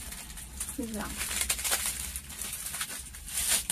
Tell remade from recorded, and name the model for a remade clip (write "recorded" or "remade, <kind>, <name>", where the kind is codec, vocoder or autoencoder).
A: recorded